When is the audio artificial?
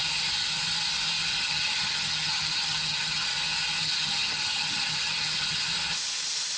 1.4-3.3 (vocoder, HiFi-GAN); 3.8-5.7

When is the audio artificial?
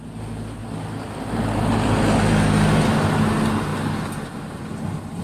none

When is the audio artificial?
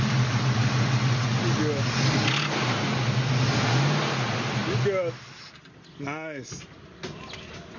none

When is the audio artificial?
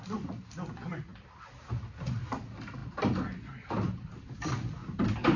none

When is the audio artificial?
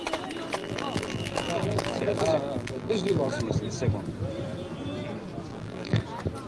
0.6-3.4 (vocoder, BigVGAN v2); 5.5-6.0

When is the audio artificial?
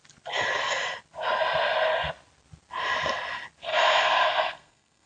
3.7-5.1 (codec, SNAC)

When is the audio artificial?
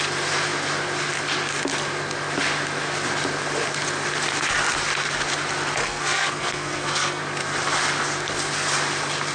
5.8-7.2 (codec, SNAC)